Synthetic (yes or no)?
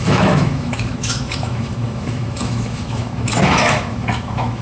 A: yes